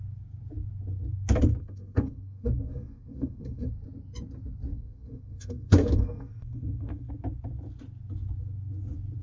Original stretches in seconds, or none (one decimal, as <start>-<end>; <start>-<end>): 0.0-1.6; 3.7-4.7; 7.1-9.2